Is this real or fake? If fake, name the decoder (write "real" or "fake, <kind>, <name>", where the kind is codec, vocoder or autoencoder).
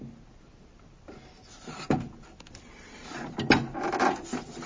real